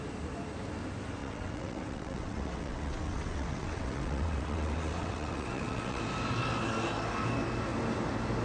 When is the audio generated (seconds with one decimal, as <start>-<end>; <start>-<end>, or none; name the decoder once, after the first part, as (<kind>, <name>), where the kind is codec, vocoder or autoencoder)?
1.2-6.0 (vocoder, WaveNeXt)